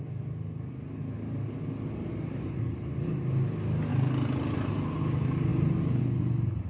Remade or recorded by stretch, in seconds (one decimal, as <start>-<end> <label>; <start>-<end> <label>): 0.0-6.7 recorded